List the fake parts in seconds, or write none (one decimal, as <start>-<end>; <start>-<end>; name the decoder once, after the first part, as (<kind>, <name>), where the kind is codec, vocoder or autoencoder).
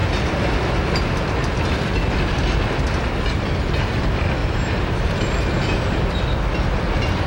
4.4-5.1 (vocoder, BigVGAN v2)